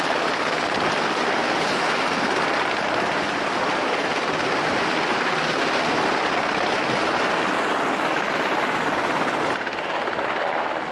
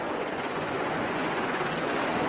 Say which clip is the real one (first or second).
first